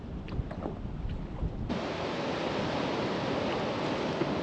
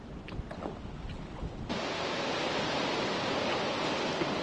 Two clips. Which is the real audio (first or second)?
second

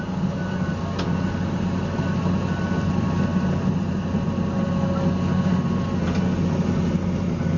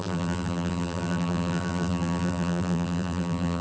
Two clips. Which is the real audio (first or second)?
first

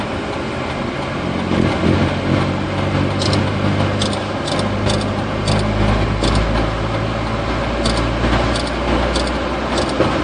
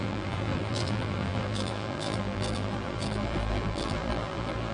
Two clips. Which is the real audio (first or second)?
first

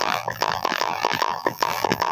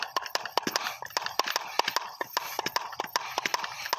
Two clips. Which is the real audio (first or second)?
second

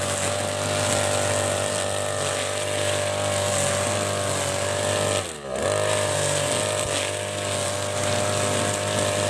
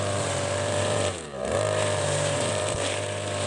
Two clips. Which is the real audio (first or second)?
first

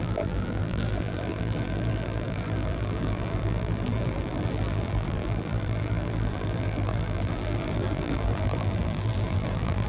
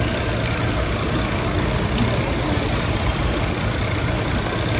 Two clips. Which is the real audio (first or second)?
second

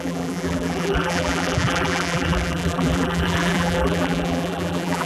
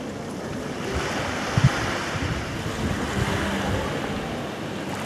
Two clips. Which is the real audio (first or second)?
second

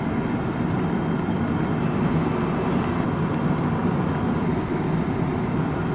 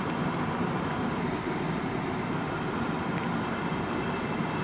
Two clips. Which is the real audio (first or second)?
first